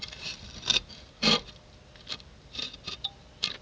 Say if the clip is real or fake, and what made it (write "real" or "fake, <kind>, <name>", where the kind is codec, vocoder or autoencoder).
real